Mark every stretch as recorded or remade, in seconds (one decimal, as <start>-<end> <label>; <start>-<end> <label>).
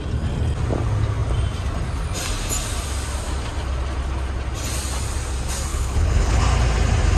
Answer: 0.0-5.7 recorded; 5.7-6.4 remade; 6.4-7.2 recorded